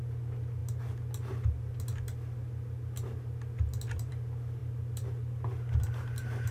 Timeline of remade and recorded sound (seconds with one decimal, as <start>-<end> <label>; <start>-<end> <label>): 0.0-6.5 recorded